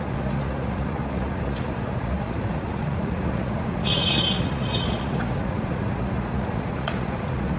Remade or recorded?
remade